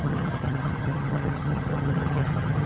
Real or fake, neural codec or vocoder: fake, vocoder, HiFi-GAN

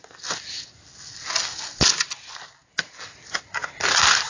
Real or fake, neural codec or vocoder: real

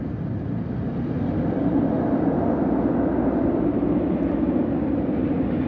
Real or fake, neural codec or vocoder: real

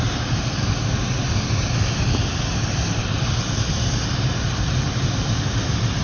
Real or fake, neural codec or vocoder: real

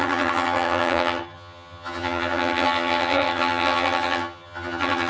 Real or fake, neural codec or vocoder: fake, vocoder, HiFi-GAN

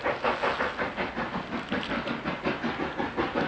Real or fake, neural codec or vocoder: real